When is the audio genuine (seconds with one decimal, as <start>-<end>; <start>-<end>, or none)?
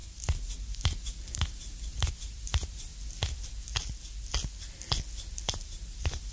2.9-5.5